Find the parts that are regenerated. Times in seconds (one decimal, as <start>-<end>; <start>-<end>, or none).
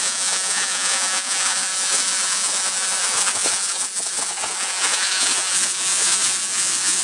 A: 0.0-7.0